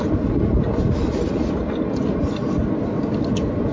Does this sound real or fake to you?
real